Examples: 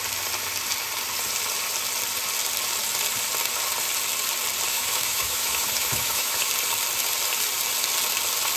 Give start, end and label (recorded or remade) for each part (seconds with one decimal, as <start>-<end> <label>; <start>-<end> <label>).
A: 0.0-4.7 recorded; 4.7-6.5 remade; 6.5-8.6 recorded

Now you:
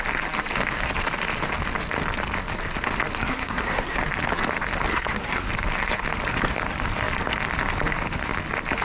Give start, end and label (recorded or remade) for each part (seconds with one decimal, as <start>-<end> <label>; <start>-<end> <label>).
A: 0.0-3.3 recorded; 3.3-4.0 remade; 4.0-4.9 recorded; 4.9-5.5 remade; 5.5-8.8 recorded

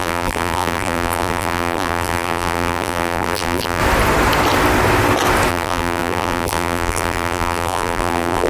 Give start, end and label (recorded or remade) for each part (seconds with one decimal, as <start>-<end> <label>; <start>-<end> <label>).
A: 0.0-3.8 remade; 3.8-5.5 recorded; 5.5-8.5 remade

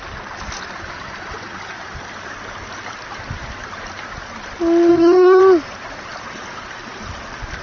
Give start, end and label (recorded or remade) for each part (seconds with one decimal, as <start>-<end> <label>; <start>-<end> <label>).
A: 0.0-4.9 recorded; 4.9-5.4 remade; 5.4-7.6 recorded

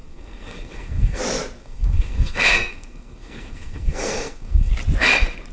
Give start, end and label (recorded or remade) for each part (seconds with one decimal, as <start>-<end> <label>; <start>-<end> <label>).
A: 0.0-1.2 remade; 1.2-1.6 recorded; 1.6-4.7 remade; 4.7-5.5 recorded